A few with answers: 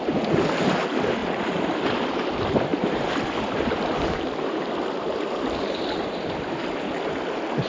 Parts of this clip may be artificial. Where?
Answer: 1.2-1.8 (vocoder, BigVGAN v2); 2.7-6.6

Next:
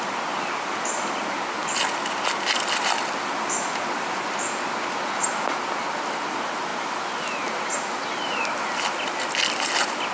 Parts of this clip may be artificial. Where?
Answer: none

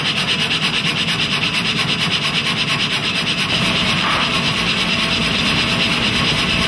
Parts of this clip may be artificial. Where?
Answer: 3.0-4.8 (vocoder, BigVGAN v2)

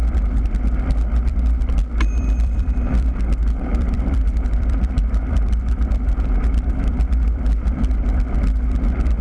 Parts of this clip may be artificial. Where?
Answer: 1.3-3.2 (vocoder, BigVGAN v2); 3.7-7.8

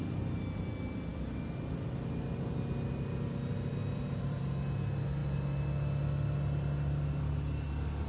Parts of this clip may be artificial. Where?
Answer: 3.8-4.4 (vocoder, BigVGAN v2)

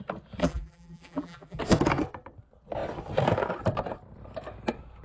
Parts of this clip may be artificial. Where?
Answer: 0.4-1.6 (vocoder, BigVGAN v2)